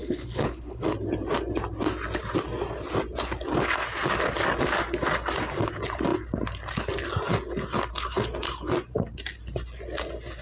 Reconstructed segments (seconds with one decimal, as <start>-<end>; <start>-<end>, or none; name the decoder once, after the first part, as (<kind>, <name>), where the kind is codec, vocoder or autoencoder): 0.0-0.8 (codec, HILCodec)